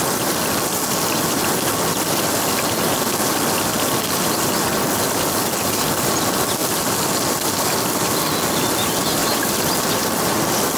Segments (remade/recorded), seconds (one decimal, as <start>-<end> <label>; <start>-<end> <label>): 0.0-9.2 recorded; 9.2-9.8 remade; 9.8-10.8 recorded